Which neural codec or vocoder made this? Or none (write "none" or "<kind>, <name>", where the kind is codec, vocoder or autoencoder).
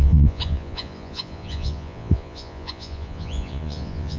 vocoder, Vocos